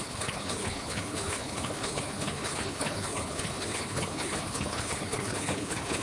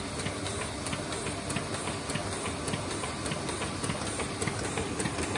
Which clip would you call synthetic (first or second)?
first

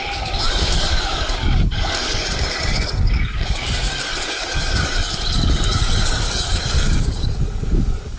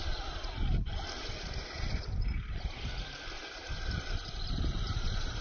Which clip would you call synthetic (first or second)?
first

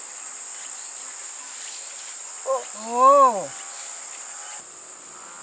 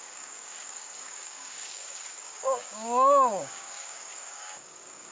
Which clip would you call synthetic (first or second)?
second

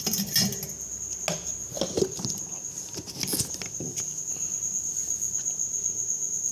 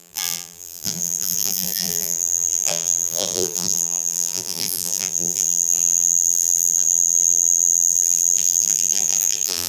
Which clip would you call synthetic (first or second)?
second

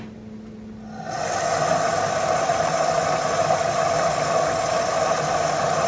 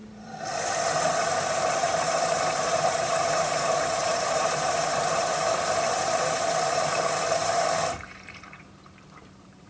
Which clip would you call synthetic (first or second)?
second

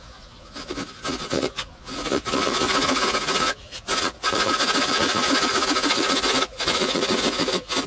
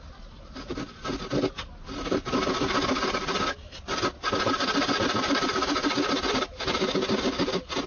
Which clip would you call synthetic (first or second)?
first